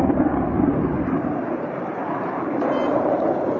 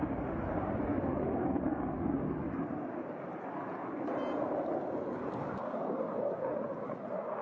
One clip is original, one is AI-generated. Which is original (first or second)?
second